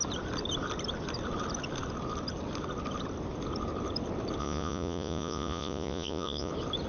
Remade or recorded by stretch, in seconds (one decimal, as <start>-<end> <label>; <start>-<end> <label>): 0.0-4.4 recorded; 4.4-6.5 remade; 6.5-6.9 recorded